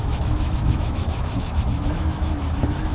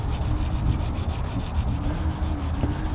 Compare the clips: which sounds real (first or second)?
second